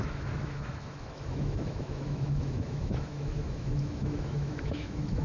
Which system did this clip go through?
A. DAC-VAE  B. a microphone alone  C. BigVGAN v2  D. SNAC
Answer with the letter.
A